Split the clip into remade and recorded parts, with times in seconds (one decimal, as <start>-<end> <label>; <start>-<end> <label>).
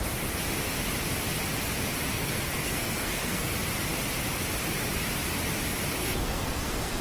0.0-2.1 recorded; 2.1-3.5 remade; 3.5-6.0 recorded; 6.0-7.0 remade